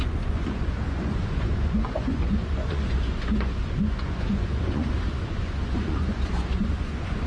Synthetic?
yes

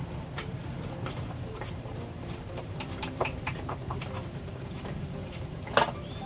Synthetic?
yes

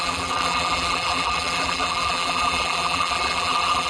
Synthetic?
yes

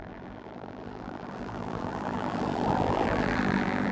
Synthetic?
yes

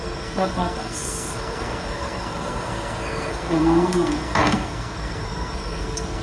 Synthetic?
yes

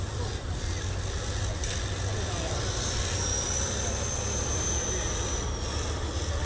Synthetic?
no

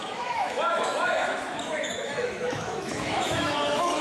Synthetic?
yes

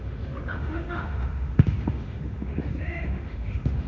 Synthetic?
yes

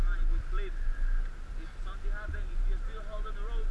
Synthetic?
no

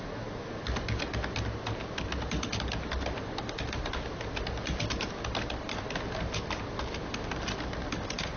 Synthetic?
no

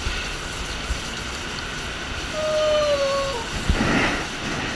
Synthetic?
no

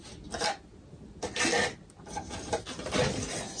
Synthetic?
no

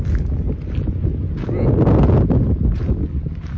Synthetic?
no